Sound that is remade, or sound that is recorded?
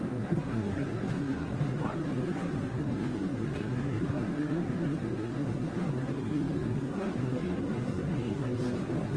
remade